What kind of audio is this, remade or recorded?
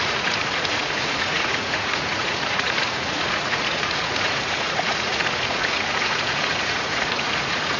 remade